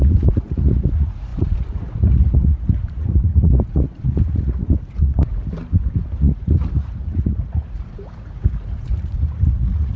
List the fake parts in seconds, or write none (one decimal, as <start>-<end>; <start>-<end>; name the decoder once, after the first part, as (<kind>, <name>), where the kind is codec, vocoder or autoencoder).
0.0-5.3 (vocoder, Vocos); 6.2-10.0